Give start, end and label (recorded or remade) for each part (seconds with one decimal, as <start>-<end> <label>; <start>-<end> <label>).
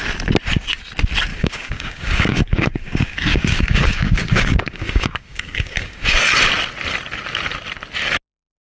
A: 0.0-1.3 recorded; 1.3-6.2 remade; 6.2-8.6 recorded